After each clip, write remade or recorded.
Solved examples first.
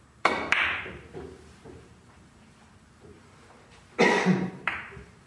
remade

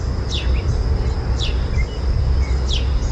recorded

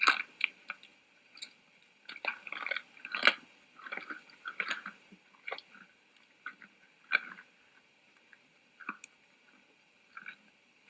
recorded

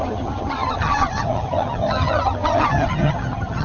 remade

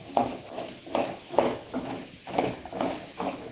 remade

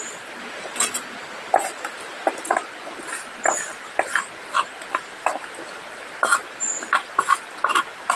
recorded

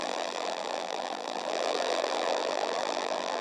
remade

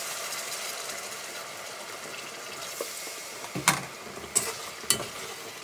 recorded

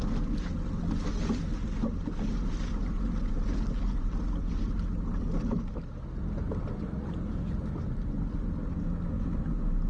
recorded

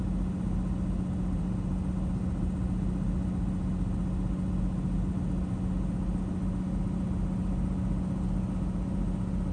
recorded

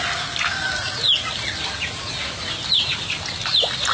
recorded